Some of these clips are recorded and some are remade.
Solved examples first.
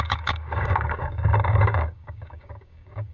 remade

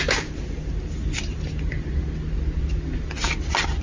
recorded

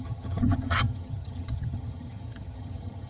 remade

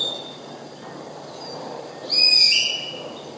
recorded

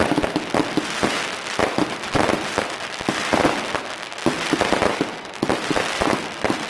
recorded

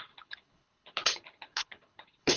remade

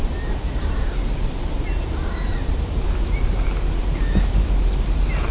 recorded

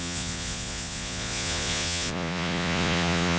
remade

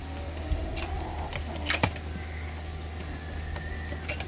recorded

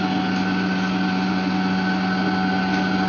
recorded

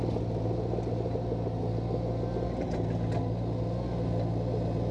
recorded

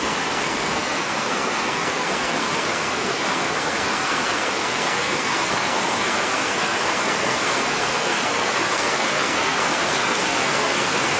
remade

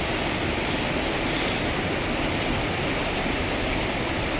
recorded